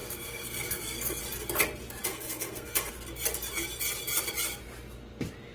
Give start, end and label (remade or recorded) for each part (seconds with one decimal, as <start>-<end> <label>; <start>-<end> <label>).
0.0-1.2 remade; 1.2-2.1 recorded; 2.1-2.9 remade; 2.9-5.5 recorded